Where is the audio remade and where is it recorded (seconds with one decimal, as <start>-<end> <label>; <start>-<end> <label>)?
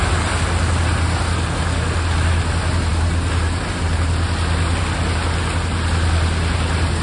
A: 0.0-7.0 recorded